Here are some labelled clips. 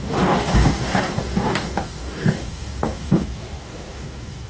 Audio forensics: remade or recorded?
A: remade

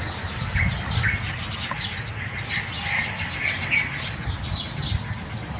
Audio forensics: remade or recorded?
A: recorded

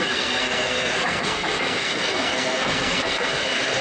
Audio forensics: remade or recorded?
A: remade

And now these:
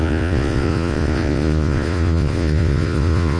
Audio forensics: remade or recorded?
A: remade